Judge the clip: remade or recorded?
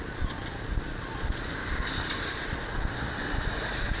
recorded